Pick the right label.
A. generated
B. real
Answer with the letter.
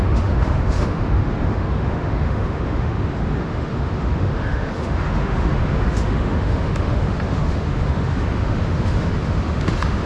A